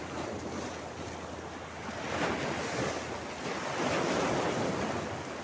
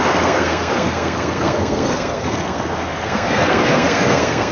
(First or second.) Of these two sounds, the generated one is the second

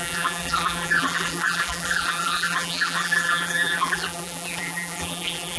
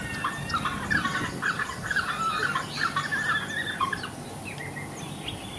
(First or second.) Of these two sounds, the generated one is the first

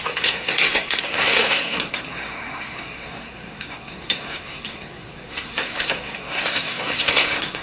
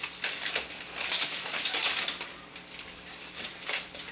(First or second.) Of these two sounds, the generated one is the first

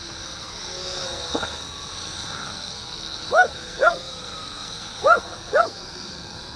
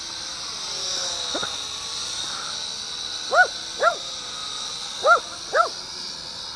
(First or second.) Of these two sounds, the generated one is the first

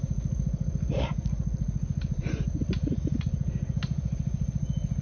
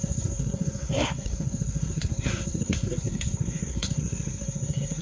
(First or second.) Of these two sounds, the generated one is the second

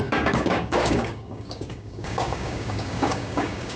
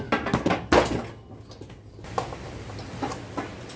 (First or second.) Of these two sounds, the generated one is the first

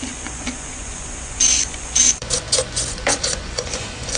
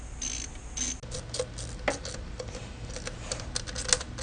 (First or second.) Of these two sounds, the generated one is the first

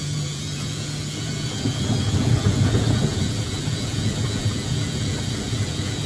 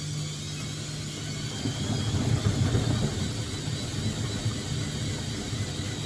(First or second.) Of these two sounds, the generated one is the first